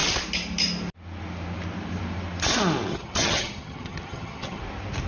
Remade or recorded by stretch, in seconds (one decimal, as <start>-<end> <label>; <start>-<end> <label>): 0.0-2.9 recorded; 2.9-4.6 remade; 4.6-5.1 recorded